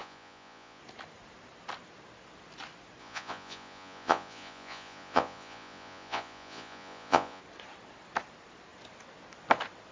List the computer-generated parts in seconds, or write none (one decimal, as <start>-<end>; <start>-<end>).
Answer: 0.0-0.8; 3.0-7.4